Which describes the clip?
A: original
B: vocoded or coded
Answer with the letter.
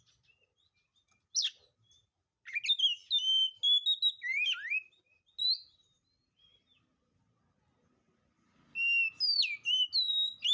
A